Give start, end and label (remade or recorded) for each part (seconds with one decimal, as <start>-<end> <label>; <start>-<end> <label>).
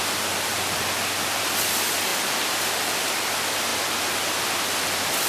0.0-2.1 recorded; 2.1-3.2 remade; 3.2-5.3 recorded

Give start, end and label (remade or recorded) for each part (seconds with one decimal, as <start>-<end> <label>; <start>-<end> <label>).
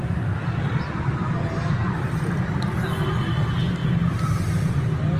0.0-3.8 recorded; 3.8-4.5 remade; 4.5-5.2 recorded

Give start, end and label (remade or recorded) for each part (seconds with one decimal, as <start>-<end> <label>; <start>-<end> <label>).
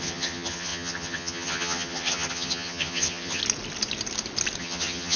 0.0-3.4 remade; 3.4-4.6 recorded; 4.6-5.2 remade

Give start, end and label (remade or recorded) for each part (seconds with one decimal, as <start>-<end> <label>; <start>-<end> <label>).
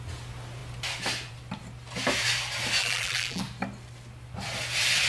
0.0-2.8 recorded; 2.8-3.4 remade; 3.4-5.1 recorded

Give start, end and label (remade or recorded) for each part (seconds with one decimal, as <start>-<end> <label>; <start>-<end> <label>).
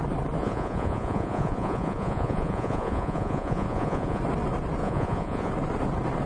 0.0-0.4 recorded; 0.4-4.2 remade; 4.2-4.8 recorded; 4.8-5.5 remade; 5.5-6.3 recorded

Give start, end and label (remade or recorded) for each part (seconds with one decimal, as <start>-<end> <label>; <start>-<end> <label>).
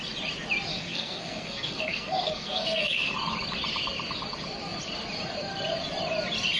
0.0-0.7 recorded; 0.7-3.1 remade; 3.1-6.6 recorded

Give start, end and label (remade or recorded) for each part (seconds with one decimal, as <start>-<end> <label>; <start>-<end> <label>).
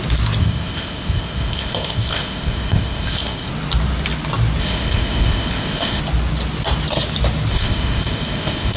0.0-0.4 recorded; 0.4-3.5 remade; 3.5-4.6 recorded; 4.6-6.0 remade; 6.0-7.5 recorded; 7.5-8.8 remade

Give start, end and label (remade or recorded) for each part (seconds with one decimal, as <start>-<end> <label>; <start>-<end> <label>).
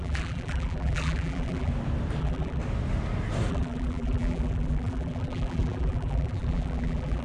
0.0-1.7 remade; 1.7-2.2 recorded; 2.2-2.6 remade; 2.6-3.5 recorded; 3.5-7.2 remade